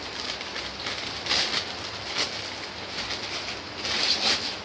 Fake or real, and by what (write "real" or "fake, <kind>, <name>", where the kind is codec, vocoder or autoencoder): real